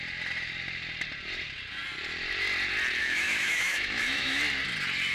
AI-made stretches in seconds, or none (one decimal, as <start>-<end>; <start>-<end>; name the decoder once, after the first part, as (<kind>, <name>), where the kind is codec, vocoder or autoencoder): 3.0-4.4 (autoencoder, DAC-VAE)